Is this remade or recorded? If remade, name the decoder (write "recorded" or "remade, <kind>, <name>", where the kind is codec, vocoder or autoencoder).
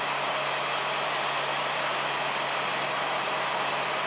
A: recorded